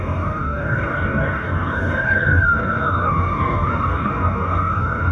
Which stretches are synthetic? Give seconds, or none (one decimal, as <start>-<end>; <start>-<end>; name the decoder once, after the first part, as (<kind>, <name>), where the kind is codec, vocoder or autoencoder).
0.0-5.1 (codec, DAC)